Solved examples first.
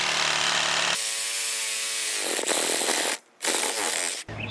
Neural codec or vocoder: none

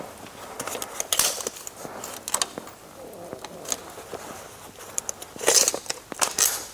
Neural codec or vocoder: none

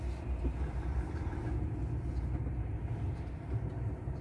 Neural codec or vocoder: none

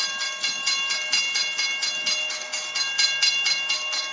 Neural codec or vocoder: none